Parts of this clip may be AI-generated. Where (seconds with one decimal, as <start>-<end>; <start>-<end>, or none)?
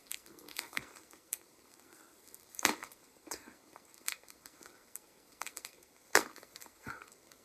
0.0-7.4